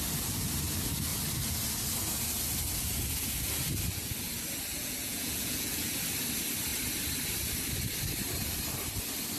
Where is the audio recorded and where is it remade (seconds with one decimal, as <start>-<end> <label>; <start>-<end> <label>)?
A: 0.0-4.7 recorded; 4.7-5.9 remade; 5.9-9.4 recorded